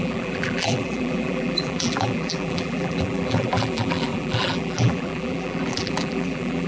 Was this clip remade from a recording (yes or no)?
yes